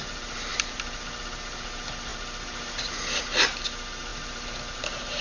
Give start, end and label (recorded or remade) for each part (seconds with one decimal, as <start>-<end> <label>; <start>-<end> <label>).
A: 0.0-0.5 recorded; 0.5-1.2 remade; 1.2-5.2 recorded